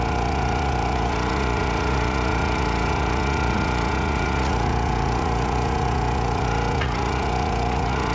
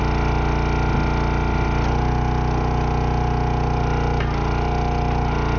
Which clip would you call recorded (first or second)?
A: second